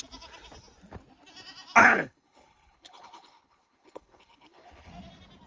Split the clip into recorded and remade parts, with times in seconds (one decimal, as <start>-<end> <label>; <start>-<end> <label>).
0.0-1.8 recorded; 1.8-4.9 remade; 4.9-5.5 recorded

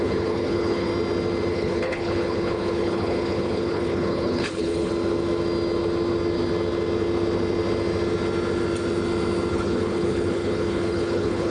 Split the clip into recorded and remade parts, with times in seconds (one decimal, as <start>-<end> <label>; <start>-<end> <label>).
0.0-0.9 remade; 0.9-1.5 recorded; 1.5-4.9 remade; 4.9-9.5 recorded; 9.5-11.5 remade

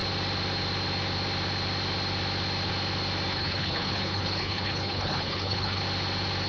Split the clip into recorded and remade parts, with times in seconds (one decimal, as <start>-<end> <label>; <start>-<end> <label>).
0.0-3.3 recorded; 3.3-5.8 remade; 5.8-6.5 recorded

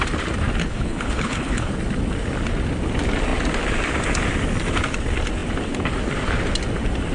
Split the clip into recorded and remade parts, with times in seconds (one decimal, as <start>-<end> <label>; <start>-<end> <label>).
0.0-0.6 recorded; 0.6-1.7 remade; 1.7-7.1 recorded

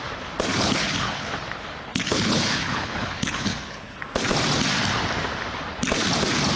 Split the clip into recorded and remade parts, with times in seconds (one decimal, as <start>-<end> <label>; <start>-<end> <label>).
0.0-0.5 recorded; 0.5-1.3 remade; 1.3-1.9 recorded; 1.9-4.0 remade; 4.0-6.6 recorded

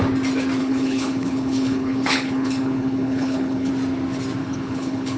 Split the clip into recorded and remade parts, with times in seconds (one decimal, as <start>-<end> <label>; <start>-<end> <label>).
0.0-0.6 recorded; 0.6-3.7 remade; 3.7-4.4 recorded; 4.4-5.2 remade

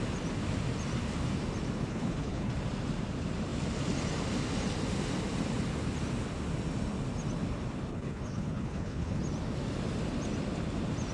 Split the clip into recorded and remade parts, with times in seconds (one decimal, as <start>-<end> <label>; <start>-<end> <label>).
0.0-1.9 recorded; 1.9-2.5 remade; 2.5-7.9 recorded; 7.9-9.2 remade; 9.2-11.1 recorded

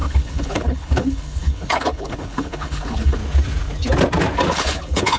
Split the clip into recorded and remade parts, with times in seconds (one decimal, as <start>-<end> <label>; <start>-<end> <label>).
0.0-3.2 remade; 3.2-4.5 recorded; 4.5-5.2 remade